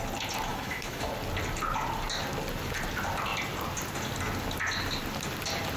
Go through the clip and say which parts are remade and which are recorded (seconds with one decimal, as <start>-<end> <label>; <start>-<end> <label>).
0.0-0.5 recorded; 0.5-1.1 remade; 1.1-5.8 recorded